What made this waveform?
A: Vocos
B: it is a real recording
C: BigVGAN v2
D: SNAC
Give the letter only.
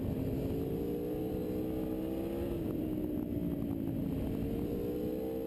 B